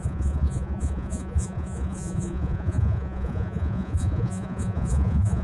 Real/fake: fake